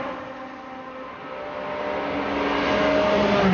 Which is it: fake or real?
real